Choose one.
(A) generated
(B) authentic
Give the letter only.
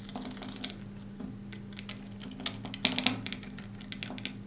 B